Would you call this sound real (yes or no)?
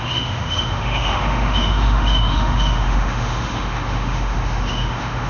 no